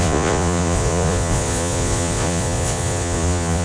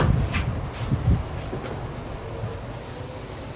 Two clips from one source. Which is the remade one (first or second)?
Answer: first